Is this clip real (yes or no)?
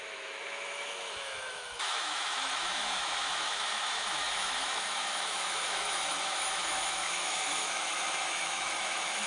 no